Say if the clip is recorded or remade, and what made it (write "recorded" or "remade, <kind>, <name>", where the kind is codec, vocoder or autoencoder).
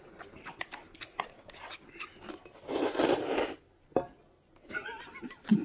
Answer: recorded